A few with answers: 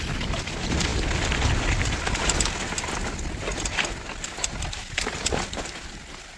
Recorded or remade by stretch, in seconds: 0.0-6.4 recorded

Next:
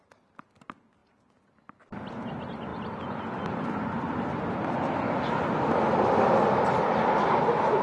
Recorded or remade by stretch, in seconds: 0.0-7.8 recorded

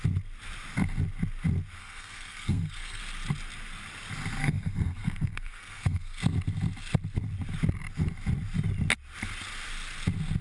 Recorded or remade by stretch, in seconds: 0.0-1.8 recorded; 1.8-3.0 remade; 3.0-4.4 recorded; 4.4-6.2 remade; 6.2-10.4 recorded

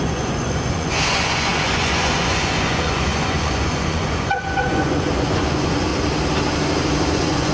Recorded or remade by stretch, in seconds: 0.0-5.9 remade; 5.9-7.1 recorded; 7.1-7.5 remade

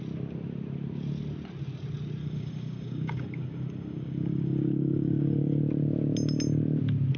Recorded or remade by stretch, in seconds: 0.0-2.2 recorded; 2.2-5.6 remade; 5.6-7.2 recorded

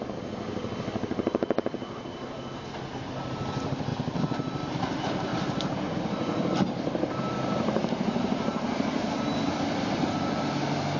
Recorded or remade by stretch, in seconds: 0.0-5.3 recorded; 5.3-10.1 remade; 10.1-11.0 recorded

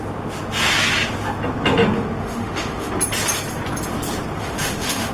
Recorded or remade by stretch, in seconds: 0.0-2.2 recorded; 2.2-2.9 remade; 2.9-4.4 recorded; 4.4-5.1 remade

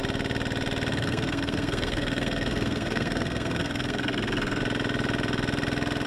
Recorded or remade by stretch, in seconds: 0.0-0.9 recorded; 0.9-4.6 remade; 4.6-6.1 recorded